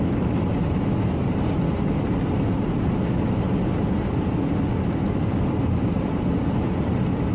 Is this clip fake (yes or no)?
no